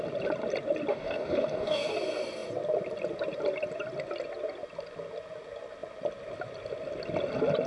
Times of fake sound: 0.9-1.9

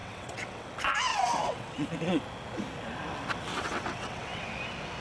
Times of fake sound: 0.0-0.7; 1.1-2.2; 3.5-4.5